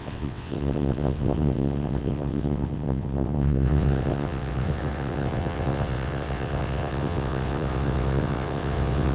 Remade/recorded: remade